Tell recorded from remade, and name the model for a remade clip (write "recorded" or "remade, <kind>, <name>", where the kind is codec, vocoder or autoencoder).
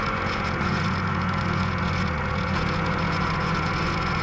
remade, vocoder, Vocos